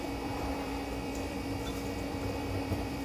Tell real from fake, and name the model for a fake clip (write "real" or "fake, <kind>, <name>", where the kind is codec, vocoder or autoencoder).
fake, vocoder, BigVGAN v2